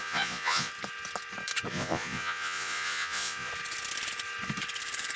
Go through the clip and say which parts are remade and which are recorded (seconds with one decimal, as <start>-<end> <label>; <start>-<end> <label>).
0.0-0.7 remade; 0.7-1.7 recorded; 1.7-3.5 remade; 3.5-5.2 recorded